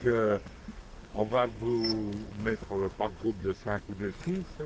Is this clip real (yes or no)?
no